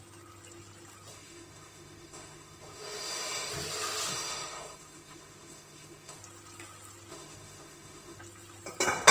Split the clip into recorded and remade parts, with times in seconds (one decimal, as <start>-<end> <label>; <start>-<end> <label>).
0.0-1.1 recorded; 1.1-3.5 remade; 3.5-4.1 recorded; 4.1-6.2 remade; 6.2-7.1 recorded; 7.1-8.2 remade; 8.2-9.1 recorded